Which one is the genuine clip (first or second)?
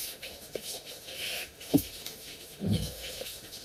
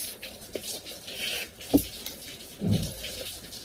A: second